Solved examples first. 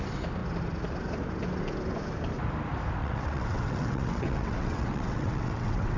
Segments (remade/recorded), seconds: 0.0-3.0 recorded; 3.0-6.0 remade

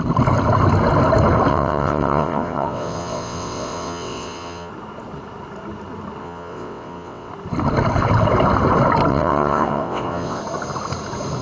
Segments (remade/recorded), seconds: 0.0-1.5 recorded; 1.5-4.7 remade; 4.7-6.2 recorded; 6.2-7.3 remade; 7.3-9.1 recorded; 9.1-10.4 remade; 10.4-11.4 recorded

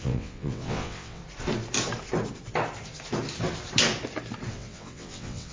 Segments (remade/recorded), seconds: 0.0-1.2 remade; 1.2-4.5 recorded; 4.5-5.5 remade

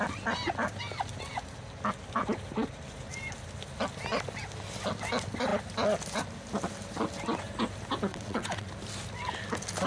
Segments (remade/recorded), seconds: 0.0-8.1 recorded; 8.1-8.7 remade; 8.7-9.9 recorded

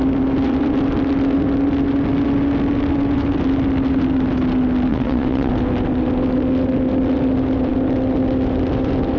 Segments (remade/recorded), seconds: 0.0-4.9 recorded; 4.9-5.5 remade; 5.5-9.2 recorded

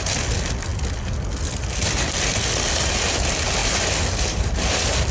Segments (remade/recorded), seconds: 0.0-5.1 recorded